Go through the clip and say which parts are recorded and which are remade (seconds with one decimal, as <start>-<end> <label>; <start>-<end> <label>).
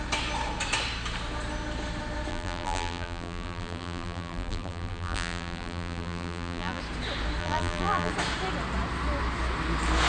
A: 0.0-2.3 recorded; 2.3-6.8 remade; 6.8-7.4 recorded; 7.4-8.1 remade; 8.1-10.1 recorded